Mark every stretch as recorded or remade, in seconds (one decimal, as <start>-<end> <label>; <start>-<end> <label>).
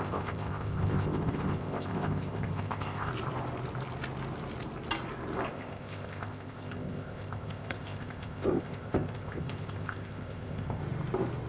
0.0-3.1 remade; 3.1-5.5 recorded; 5.5-10.8 remade; 10.8-11.5 recorded